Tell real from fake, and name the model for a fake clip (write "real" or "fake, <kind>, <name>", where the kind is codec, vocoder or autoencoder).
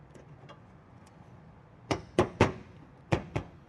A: fake, vocoder, Vocos